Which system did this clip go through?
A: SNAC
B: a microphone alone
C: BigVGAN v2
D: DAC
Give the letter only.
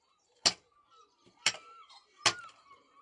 B